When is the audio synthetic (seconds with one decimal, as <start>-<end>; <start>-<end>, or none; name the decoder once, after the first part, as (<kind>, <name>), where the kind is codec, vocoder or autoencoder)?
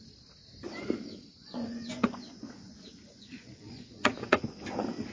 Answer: 1.4-2.7 (vocoder, Vocos); 3.1-4.4